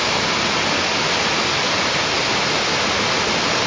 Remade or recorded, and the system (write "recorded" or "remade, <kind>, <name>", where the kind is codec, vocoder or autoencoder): recorded